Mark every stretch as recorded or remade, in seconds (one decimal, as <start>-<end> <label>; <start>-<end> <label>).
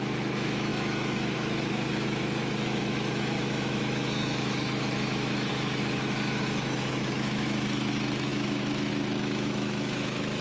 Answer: 0.0-10.4 remade